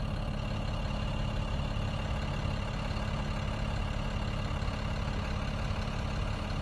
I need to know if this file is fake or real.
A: real